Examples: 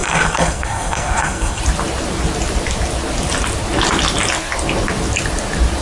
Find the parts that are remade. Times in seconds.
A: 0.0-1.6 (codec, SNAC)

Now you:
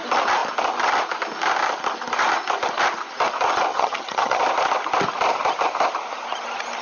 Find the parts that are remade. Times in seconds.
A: 3.7-4.4 (vocoder, HiFi-GAN)

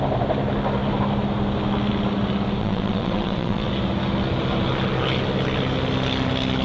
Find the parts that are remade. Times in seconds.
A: 2.6-3.7 (vocoder, WaveNeXt)

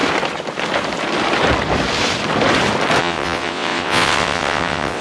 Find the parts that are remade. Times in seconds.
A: 3.0-5.0 (vocoder, WaveNeXt)

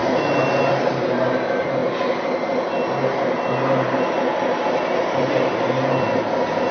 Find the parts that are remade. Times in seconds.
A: none

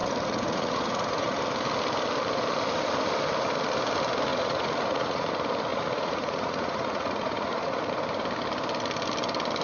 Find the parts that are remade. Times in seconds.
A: 0.0-1.4 (vocoder, Vocos); 4.3-5.3; 5.7-7.9

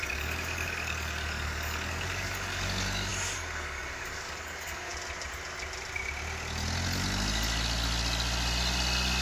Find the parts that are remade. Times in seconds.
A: 0.0-4.9 (codec, DAC)